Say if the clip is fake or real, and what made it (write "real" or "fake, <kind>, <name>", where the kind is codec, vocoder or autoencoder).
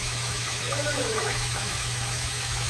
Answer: fake, autoencoder, DAC-VAE